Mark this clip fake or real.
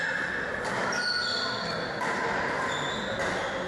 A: real